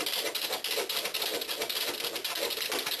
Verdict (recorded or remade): recorded